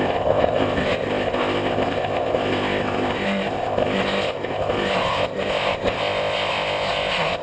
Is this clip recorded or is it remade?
remade